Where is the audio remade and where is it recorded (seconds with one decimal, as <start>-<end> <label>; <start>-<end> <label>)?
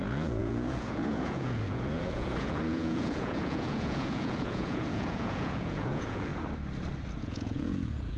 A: 0.0-6.3 remade; 6.3-7.2 recorded; 7.2-8.2 remade